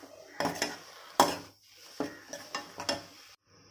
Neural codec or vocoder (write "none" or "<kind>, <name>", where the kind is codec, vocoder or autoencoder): none